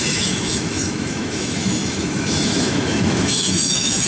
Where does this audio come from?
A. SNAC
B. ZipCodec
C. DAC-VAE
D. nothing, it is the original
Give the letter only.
C